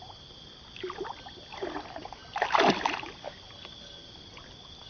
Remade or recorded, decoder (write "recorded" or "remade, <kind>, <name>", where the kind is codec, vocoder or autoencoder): recorded